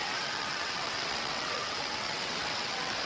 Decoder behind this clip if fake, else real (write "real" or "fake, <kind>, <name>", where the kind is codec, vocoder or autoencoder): fake, vocoder, WaveNeXt